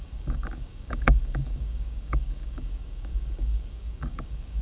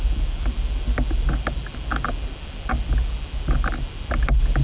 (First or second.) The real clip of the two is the second